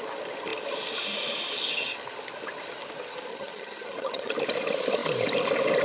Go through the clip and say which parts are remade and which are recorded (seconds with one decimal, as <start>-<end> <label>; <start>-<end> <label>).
0.0-3.3 recorded; 3.3-4.3 remade; 4.3-5.8 recorded